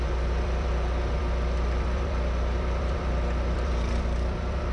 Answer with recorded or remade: remade